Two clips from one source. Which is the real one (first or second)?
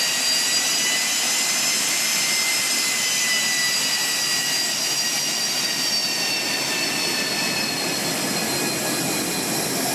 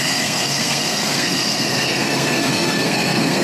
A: first